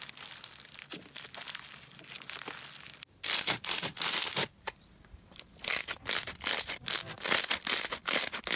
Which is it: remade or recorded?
recorded